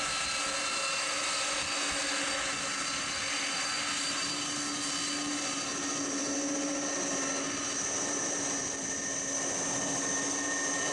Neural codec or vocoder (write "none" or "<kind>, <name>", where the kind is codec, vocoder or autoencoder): none